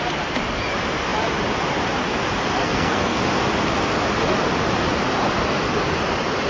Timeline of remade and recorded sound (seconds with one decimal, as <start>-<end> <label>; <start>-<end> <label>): 0.0-2.6 recorded; 2.6-3.2 remade; 3.2-6.5 recorded